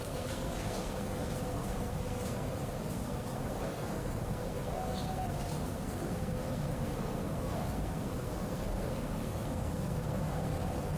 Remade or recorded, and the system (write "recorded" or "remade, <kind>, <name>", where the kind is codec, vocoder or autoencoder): remade, codec, SNAC